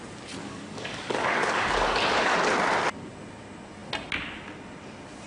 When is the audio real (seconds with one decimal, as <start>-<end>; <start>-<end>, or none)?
0.0-0.4; 2.3-5.3